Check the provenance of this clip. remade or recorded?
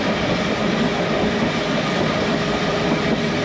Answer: recorded